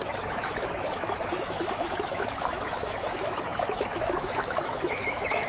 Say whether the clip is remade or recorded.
remade